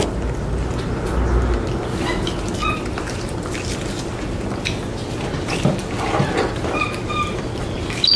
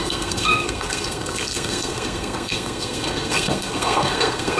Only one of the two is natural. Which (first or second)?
first